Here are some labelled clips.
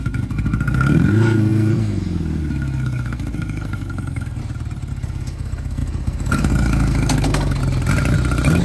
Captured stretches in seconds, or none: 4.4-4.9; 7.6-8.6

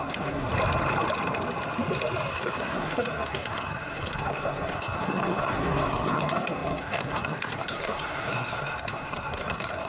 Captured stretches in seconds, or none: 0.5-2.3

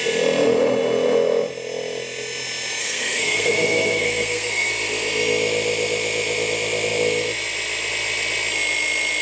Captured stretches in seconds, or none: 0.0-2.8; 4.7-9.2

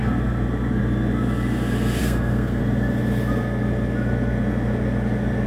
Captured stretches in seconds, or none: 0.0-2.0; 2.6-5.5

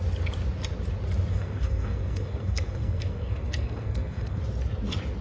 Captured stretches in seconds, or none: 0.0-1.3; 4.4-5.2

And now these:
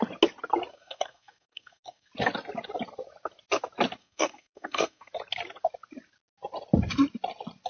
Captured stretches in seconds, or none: 0.0-0.7; 2.1-4.0; 5.1-7.7